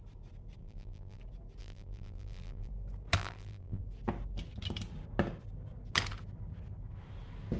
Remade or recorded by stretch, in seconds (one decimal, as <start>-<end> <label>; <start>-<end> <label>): 0.0-0.6 recorded; 0.6-1.2 remade; 1.2-1.6 recorded; 1.6-2.7 remade; 2.7-3.2 recorded; 3.2-3.8 remade; 3.8-7.6 recorded